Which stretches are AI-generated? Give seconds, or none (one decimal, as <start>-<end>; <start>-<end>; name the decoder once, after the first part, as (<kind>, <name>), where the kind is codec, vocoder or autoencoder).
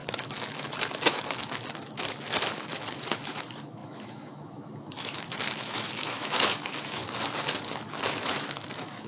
0.0-7.0 (autoencoder, DAC-VAE); 7.9-9.1